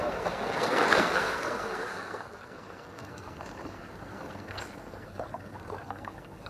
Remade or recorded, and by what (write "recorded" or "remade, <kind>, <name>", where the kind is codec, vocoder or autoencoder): remade, codec, SNAC